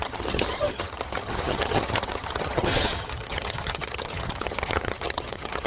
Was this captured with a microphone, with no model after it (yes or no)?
no